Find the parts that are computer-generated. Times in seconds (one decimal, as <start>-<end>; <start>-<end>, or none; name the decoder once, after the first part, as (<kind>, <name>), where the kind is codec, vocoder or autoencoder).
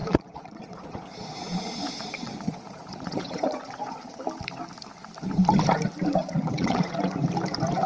0.0-4.2 (vocoder, Vocos); 6.2-6.9